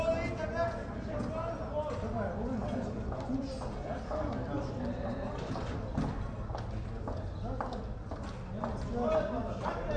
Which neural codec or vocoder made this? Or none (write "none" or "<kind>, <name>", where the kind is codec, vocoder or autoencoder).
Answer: none